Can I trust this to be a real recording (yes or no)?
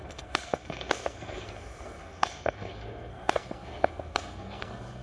no